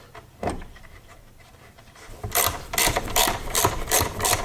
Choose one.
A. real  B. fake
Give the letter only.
B